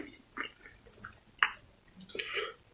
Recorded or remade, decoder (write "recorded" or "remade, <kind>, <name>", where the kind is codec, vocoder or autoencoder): recorded